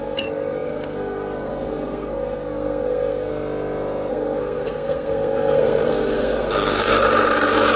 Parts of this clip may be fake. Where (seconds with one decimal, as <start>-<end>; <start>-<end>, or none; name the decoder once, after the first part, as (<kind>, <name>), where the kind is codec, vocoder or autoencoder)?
0.0-3.3 (codec, SNAC); 4.1-6.9